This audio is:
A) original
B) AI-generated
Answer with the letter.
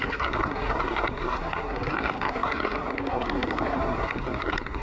B